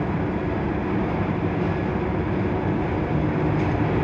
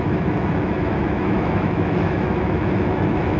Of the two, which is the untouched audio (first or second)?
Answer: first